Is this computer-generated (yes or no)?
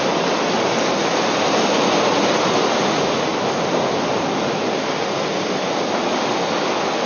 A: no